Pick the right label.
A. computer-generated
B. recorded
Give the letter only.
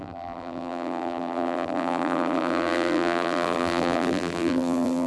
A